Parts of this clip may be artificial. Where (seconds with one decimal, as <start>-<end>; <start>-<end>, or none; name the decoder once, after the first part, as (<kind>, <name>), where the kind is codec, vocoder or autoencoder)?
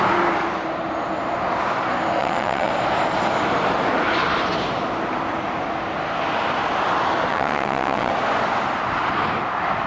2.2-2.7 (vocoder, WaveNeXt); 7.3-8.1